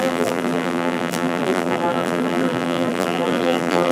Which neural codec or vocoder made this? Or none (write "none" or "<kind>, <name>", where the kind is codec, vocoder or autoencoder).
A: vocoder, BigVGAN v2